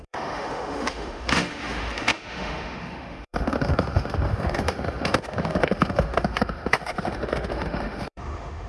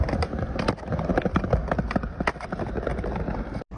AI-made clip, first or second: first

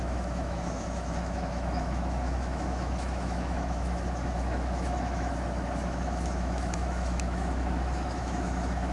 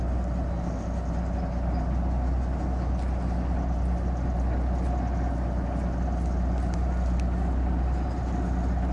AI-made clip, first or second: first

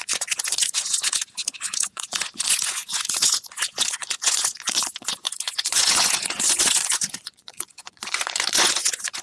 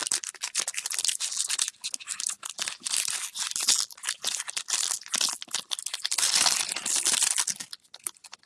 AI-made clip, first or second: first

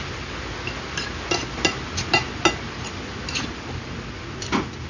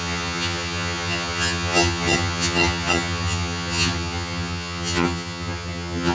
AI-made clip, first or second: second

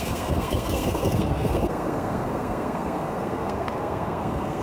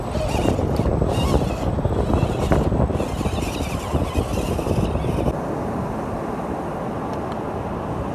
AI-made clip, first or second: first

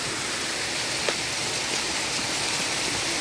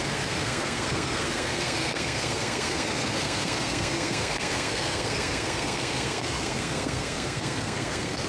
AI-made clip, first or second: second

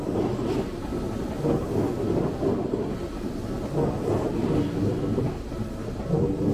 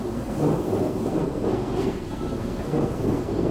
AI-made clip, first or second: second